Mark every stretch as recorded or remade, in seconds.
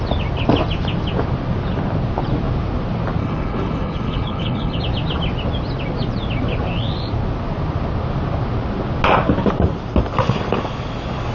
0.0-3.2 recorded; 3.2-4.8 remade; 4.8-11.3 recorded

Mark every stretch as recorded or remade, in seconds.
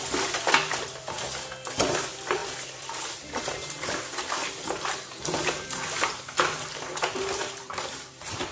0.0-2.4 recorded; 2.4-3.4 remade; 3.4-7.4 recorded; 7.4-8.1 remade; 8.1-8.5 recorded